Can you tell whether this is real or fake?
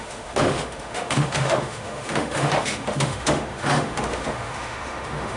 fake